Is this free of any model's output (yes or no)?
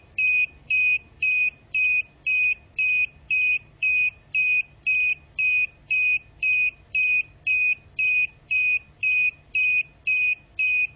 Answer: yes